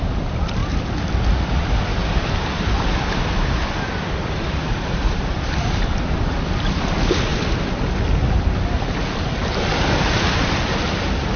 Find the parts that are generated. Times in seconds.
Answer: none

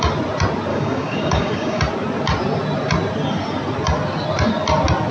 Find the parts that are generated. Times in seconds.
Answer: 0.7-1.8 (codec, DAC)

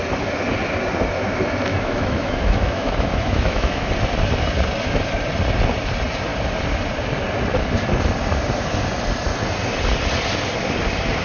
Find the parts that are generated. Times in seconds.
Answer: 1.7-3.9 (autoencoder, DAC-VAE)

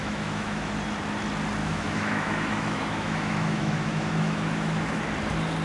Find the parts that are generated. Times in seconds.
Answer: 0.0-0.7 (autoencoder, DAC-VAE); 1.6-5.0

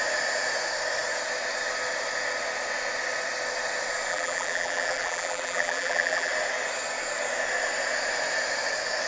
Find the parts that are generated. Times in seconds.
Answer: 4.1-6.3 (vocoder, BigVGAN v2)

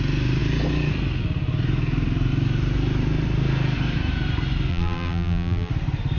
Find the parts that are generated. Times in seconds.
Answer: 4.7-5.7 (vocoder, BigVGAN v2)

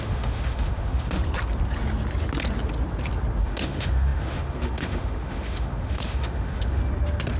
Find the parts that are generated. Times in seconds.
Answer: 0.0-1.2 (autoencoder, DAC-VAE); 3.4-6.8

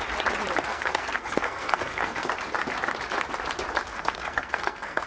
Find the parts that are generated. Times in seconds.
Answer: 0.7-2.3 (codec, SNAC); 3.9-5.1